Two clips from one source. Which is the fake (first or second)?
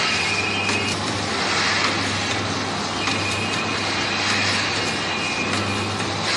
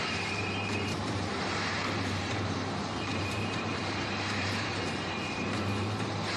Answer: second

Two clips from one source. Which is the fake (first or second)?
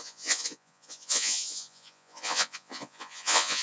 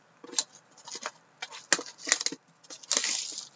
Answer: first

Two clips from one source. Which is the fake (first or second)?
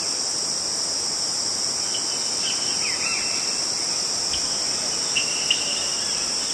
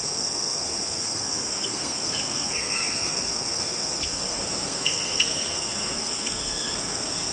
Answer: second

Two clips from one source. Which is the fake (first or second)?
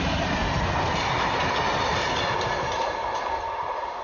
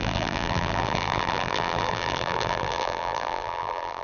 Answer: second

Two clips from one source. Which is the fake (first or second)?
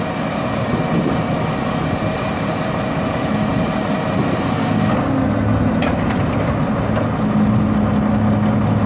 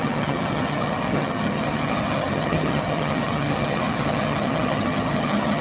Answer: second